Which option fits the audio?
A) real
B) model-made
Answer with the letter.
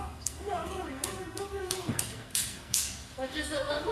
B